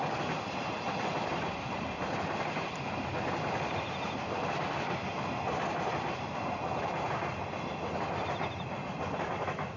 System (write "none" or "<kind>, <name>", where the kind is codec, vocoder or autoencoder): none